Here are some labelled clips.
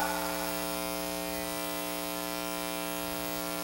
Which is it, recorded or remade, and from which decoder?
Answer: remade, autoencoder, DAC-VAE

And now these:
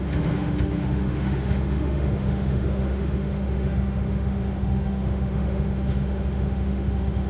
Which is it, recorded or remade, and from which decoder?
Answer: remade, autoencoder, DAC-VAE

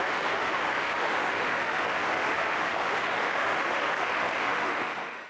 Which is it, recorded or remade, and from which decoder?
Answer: remade, autoencoder, DAC-VAE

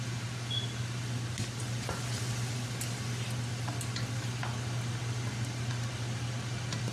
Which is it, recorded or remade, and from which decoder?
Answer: recorded